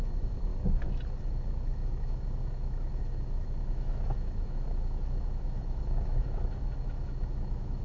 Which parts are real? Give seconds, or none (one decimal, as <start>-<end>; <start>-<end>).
0.5-1.2